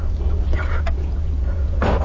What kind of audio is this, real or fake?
real